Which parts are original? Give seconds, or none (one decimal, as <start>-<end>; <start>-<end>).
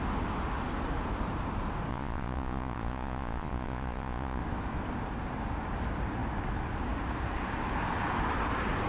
0.0-1.9; 4.4-8.9